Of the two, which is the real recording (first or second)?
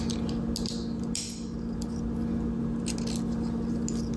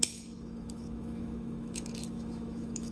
first